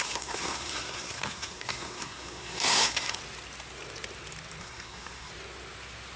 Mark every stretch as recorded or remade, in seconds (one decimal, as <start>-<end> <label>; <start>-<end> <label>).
0.0-3.2 remade; 3.2-4.6 recorded; 4.6-5.3 remade; 5.3-6.2 recorded